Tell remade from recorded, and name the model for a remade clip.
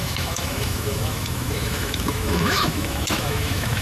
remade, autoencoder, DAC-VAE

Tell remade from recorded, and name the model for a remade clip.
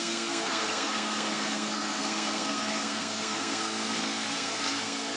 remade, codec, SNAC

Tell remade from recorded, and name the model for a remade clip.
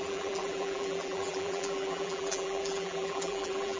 remade, vocoder, BigVGAN v2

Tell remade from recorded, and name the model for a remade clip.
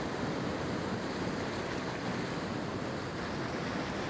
recorded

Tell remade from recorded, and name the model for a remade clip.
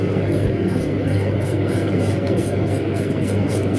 remade, codec, SNAC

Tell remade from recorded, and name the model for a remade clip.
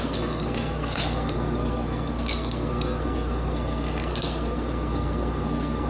remade, codec, SNAC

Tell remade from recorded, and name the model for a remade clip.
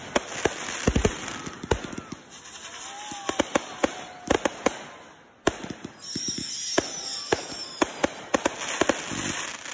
recorded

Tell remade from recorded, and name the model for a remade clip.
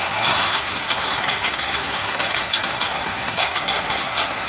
remade, codec, SNAC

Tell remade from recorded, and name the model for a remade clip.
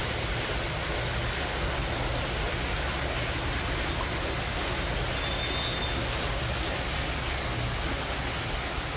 recorded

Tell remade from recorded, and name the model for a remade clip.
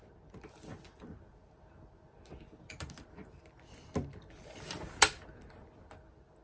recorded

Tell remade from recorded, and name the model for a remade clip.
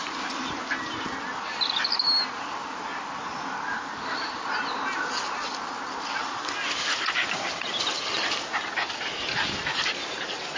recorded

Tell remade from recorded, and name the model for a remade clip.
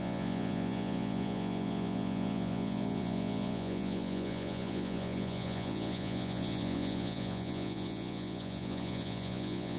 remade, vocoder, Vocos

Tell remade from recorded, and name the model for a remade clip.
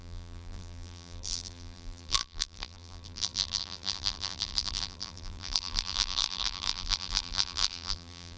remade, vocoder, BigVGAN v2